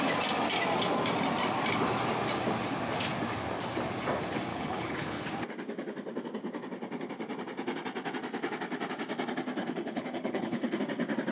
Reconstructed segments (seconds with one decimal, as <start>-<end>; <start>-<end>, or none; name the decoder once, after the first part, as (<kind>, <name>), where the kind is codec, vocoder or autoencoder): 4.5-5.2 (codec, HILCodec); 9.6-10.8